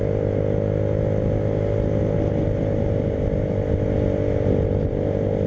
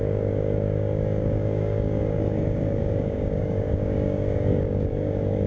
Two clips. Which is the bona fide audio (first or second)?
first